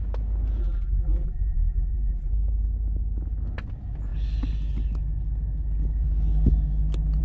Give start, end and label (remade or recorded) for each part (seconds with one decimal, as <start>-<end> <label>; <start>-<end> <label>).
0.0-0.6 recorded; 0.6-2.3 remade; 2.3-7.2 recorded